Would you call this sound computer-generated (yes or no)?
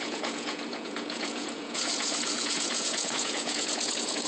yes